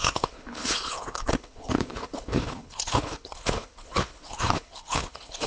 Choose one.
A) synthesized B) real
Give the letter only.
A